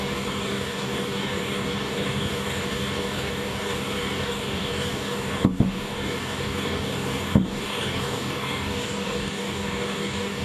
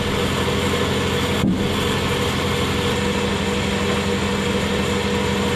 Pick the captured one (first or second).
second